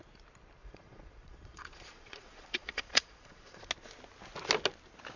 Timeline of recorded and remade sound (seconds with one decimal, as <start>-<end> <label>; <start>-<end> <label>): 0.0-0.6 recorded; 0.6-3.7 remade; 3.7-5.2 recorded